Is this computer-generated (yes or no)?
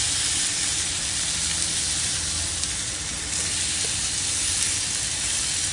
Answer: no